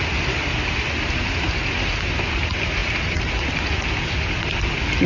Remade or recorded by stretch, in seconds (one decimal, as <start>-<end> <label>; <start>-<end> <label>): 0.0-5.1 recorded